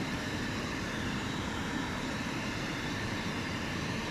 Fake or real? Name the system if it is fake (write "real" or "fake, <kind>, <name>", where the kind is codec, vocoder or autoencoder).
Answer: fake, vocoder, BigVGAN v2